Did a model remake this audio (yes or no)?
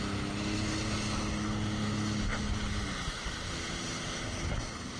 no